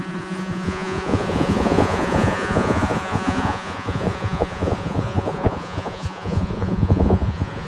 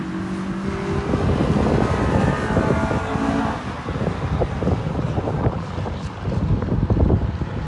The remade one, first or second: first